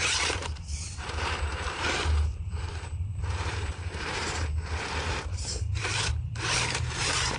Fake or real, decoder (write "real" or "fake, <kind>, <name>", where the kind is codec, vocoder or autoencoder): fake, vocoder, BigVGAN v2